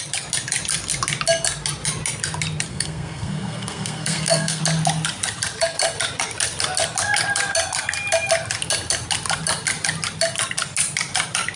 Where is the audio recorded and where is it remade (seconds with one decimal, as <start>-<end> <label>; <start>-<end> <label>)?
0.0-2.7 recorded; 2.7-4.6 remade; 4.6-11.6 recorded